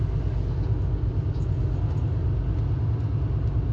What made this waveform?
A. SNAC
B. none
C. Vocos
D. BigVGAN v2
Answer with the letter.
B